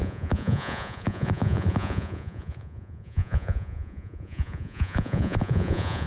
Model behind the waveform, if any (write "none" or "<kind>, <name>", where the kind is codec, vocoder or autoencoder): vocoder, Vocos